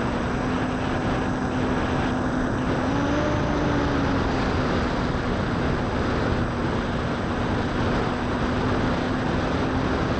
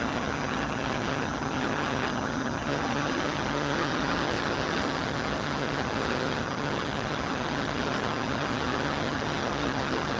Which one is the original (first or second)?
first